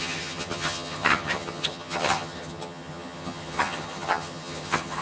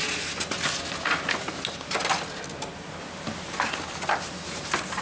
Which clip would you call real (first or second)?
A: second